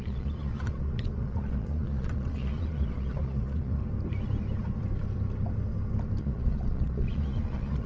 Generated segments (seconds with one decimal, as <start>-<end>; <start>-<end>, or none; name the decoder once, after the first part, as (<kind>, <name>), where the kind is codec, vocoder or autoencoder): 0.0-3.8 (vocoder, Vocos); 6.2-7.9